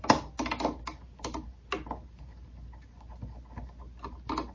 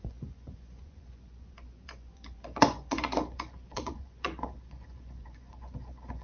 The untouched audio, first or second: first